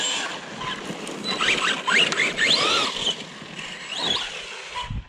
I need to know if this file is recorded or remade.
recorded